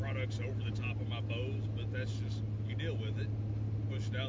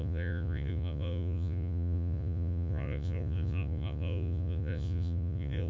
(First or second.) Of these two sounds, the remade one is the second